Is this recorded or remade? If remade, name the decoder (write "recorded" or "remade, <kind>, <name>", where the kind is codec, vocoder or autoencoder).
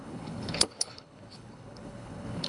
remade, codec, HILCodec